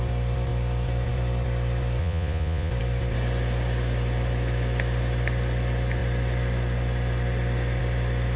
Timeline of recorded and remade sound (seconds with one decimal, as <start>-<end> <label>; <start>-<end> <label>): 0.0-2.0 recorded; 2.0-2.7 remade; 2.7-8.4 recorded